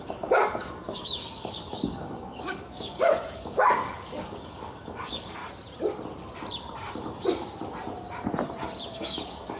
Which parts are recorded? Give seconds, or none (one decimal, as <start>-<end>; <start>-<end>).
5.4-8.9